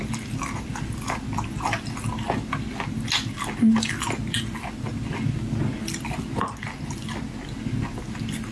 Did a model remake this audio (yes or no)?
no